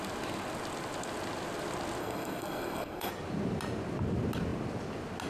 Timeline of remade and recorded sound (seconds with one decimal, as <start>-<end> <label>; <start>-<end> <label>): 0.0-2.0 recorded; 2.0-3.1 remade; 3.1-5.3 recorded